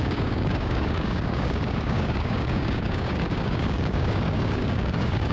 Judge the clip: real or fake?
fake